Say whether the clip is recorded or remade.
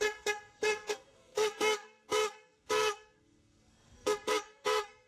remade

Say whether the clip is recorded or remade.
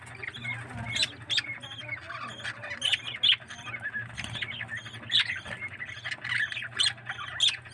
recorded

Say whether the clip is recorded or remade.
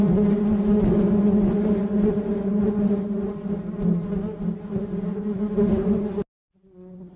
recorded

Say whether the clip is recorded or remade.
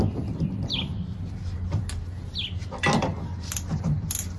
recorded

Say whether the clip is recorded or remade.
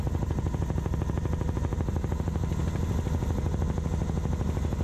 recorded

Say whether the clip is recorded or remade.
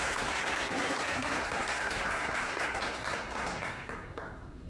remade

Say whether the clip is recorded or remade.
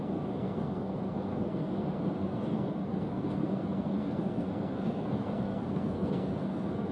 remade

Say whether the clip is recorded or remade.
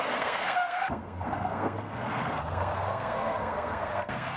remade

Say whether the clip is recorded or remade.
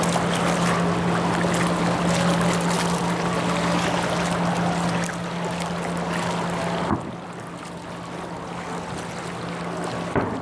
recorded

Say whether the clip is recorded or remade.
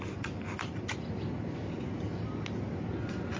recorded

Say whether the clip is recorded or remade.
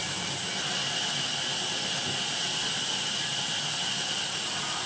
recorded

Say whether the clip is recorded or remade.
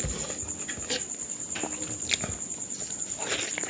recorded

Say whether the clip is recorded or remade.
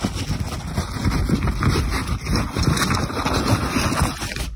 recorded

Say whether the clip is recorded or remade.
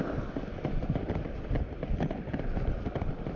recorded